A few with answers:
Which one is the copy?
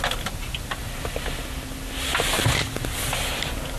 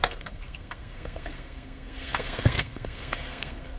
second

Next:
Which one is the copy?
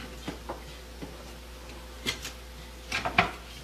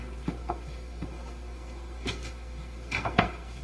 second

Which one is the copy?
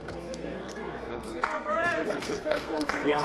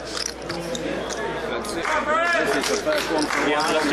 first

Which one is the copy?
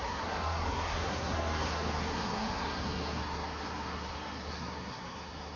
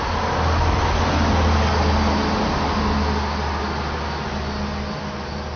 first